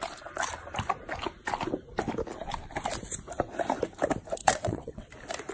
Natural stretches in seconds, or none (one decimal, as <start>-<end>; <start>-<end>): 0.0-4.4; 5.1-5.5

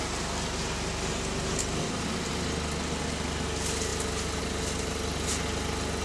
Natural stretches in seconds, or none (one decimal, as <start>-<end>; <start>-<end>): 0.0-6.0

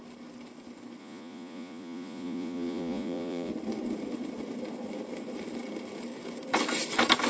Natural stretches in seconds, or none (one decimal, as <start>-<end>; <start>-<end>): 0.0-1.0; 3.5-7.3

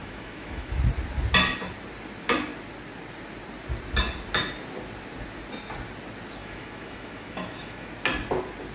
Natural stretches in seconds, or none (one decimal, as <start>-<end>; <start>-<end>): 0.7-6.4; 7.9-8.7

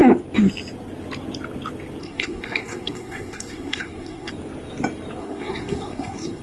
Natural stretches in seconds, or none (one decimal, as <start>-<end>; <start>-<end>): 0.0-2.0; 4.3-5.2